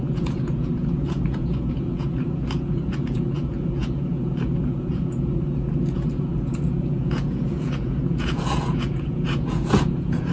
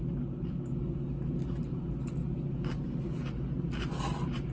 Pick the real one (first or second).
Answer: second